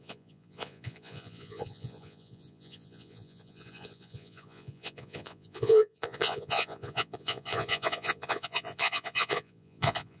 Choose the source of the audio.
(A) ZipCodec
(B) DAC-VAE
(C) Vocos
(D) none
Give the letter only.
C